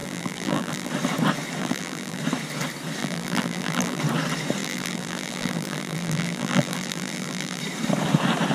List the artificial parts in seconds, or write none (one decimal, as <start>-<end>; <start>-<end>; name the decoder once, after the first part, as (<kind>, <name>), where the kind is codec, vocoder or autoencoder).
0.0-0.9 (vocoder, BigVGAN v2); 1.6-2.2; 3.0-4.0; 4.6-7.6